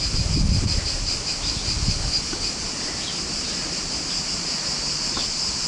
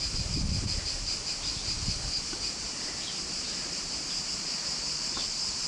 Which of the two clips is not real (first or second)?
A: second